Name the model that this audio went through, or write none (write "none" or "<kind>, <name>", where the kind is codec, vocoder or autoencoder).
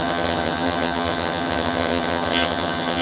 vocoder, HiFi-GAN